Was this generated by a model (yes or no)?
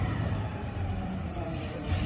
yes